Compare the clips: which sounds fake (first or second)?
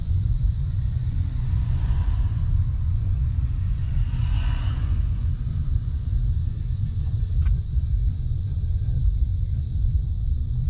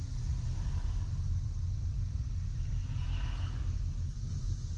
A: first